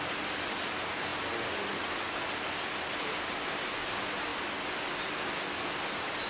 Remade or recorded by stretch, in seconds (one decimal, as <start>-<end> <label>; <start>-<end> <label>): 0.0-6.3 recorded